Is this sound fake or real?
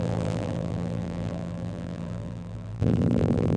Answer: fake